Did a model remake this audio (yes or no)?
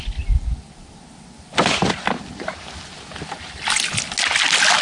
no